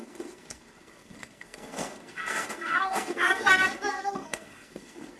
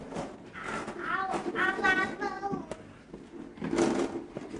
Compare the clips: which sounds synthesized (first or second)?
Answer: first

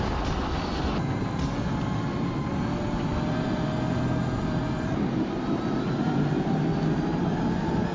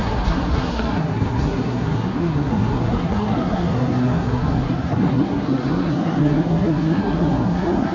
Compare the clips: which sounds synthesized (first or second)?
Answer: second